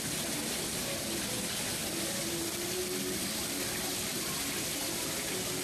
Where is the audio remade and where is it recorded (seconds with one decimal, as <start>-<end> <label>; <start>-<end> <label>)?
0.0-1.8 recorded; 1.8-5.0 remade; 5.0-5.6 recorded